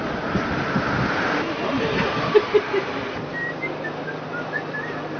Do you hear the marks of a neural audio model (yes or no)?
yes